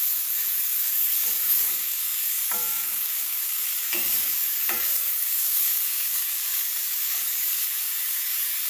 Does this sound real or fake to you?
fake